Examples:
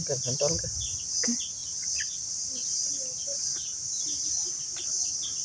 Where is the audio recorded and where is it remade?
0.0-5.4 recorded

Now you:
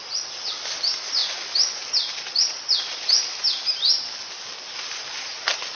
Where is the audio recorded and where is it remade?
0.0-5.8 recorded